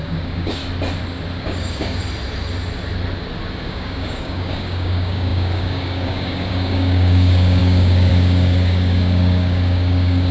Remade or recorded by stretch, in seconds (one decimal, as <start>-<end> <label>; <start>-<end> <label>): 0.0-0.6 remade; 0.6-1.4 recorded; 1.4-2.0 remade; 2.0-3.6 recorded; 3.6-10.3 remade